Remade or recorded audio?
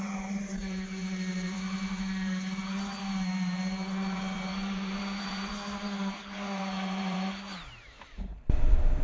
remade